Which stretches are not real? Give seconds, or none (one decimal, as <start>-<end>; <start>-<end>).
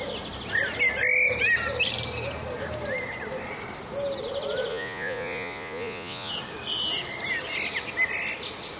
4.7-6.3